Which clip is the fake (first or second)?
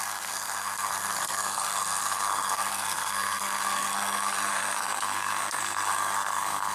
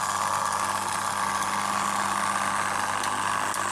first